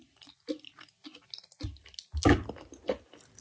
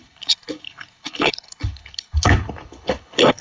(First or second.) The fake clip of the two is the second